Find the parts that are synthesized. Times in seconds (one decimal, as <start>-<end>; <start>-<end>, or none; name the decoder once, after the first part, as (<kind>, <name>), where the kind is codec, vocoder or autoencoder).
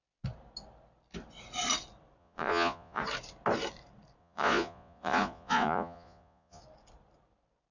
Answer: 2.2-3.0 (vocoder, Vocos); 4.2-6.6